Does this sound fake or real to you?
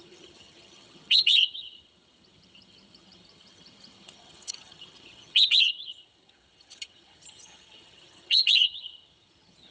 fake